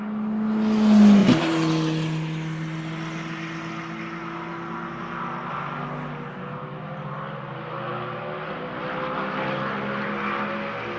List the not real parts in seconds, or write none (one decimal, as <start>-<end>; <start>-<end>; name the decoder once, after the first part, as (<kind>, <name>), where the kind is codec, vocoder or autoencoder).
none